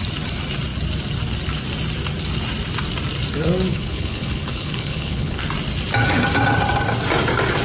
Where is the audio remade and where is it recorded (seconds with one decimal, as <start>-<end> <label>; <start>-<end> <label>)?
0.0-3.7 recorded; 3.7-5.4 remade; 5.4-7.6 recorded